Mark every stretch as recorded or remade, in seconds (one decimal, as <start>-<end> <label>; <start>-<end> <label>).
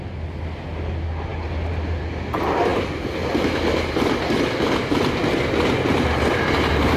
0.0-7.0 recorded